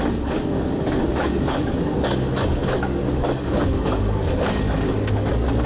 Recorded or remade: remade